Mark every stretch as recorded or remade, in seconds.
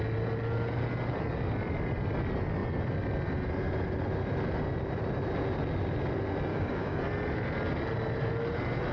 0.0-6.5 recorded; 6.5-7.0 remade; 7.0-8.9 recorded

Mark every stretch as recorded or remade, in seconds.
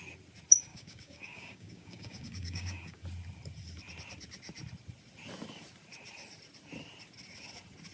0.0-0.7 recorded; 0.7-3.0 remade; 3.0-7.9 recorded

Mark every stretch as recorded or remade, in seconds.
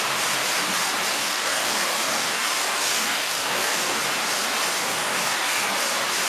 0.0-1.1 recorded; 1.1-4.0 remade; 4.0-4.8 recorded; 4.8-5.7 remade; 5.7-6.3 recorded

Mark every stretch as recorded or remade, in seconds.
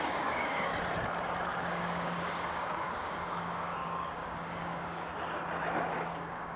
0.0-0.7 remade; 0.7-1.6 recorded; 1.6-5.1 remade; 5.1-6.1 recorded; 6.1-6.6 remade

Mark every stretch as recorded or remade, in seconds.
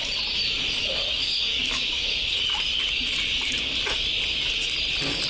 0.0-0.8 recorded; 0.8-2.4 remade; 2.4-5.3 recorded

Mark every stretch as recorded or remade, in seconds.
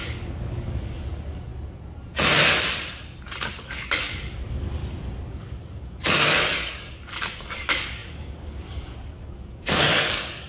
0.0-1.5 remade; 1.5-3.4 recorded; 3.4-4.8 remade; 4.8-5.3 recorded; 5.3-10.5 remade